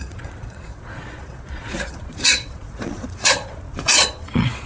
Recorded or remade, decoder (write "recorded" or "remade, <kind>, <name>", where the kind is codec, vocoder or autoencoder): remade, vocoder, Vocos